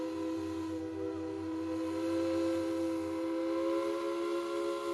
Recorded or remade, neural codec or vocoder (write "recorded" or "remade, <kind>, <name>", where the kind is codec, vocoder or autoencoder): recorded